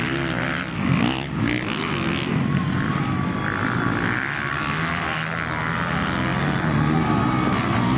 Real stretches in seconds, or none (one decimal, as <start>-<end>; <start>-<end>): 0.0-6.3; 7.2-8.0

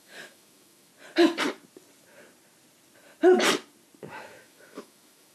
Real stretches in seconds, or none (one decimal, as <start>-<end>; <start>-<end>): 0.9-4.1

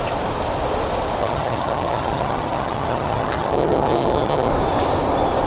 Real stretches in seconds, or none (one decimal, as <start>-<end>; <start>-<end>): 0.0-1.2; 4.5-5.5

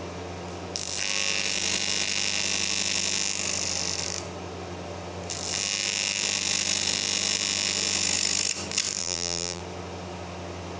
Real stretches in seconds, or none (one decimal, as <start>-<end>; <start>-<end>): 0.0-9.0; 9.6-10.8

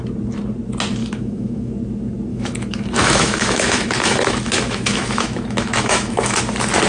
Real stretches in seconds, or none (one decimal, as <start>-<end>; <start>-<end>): 0.0-1.0; 1.7-2.3; 6.4-6.9

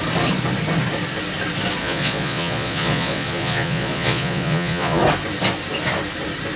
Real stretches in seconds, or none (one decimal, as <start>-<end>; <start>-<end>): 0.0-1.8; 5.0-6.6